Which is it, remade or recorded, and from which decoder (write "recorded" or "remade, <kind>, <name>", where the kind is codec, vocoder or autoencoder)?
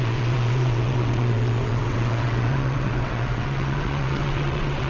remade, vocoder, WaveNeXt